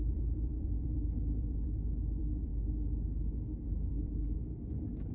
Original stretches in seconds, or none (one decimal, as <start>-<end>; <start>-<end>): 2.5-3.6; 4.5-5.1